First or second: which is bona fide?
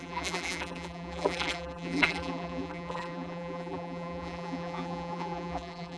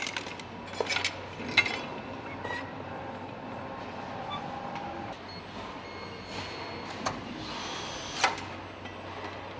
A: second